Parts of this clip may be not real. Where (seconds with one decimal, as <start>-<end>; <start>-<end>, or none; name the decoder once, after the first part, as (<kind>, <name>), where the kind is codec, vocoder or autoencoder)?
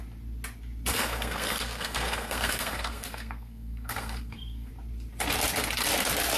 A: 0.9-4.7 (codec, SNAC)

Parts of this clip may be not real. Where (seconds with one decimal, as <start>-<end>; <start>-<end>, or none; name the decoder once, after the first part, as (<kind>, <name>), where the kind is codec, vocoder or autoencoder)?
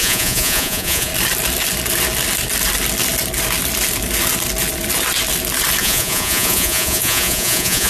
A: 0.0-1.1 (vocoder, Vocos); 5.8-7.9